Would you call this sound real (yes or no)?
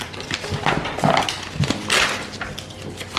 yes